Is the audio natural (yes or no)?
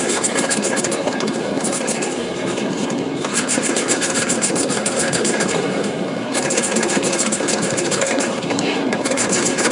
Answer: no